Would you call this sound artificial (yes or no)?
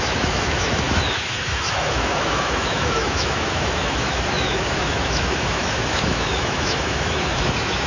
yes